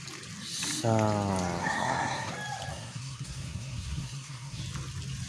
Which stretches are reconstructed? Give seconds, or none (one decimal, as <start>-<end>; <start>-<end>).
1.6-2.3; 2.7-4.6